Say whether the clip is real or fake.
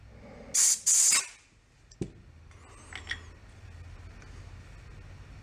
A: real